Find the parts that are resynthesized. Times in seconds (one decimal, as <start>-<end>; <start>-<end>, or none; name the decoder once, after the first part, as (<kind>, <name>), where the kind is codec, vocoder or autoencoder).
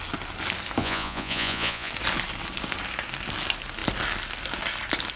0.8-1.9 (vocoder, Vocos)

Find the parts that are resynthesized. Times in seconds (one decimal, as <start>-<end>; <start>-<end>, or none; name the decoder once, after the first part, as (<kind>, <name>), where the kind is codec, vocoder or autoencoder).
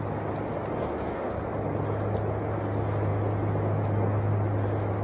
0.9-1.4 (codec, DAC)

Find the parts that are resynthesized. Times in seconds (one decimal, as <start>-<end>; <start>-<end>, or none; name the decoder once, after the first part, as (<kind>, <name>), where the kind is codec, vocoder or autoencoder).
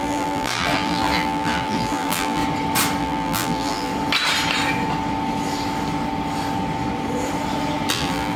0.0-2.4 (vocoder, BigVGAN v2); 3.0-3.9; 7.9-8.4